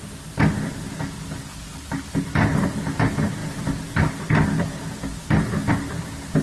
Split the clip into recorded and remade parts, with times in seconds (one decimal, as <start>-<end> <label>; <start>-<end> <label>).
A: 0.0-6.4 recorded